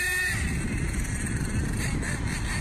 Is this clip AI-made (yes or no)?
no